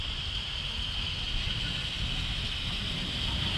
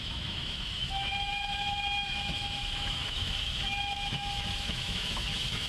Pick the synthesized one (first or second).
second